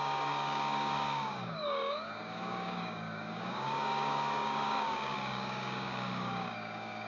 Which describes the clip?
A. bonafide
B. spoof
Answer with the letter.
B